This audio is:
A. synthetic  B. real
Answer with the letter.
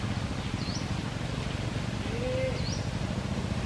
B